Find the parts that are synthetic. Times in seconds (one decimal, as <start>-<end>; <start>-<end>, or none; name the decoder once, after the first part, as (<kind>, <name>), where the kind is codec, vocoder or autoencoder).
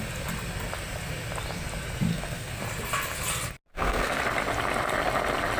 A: 2.1-2.6 (codec, SNAC); 3.7-4.2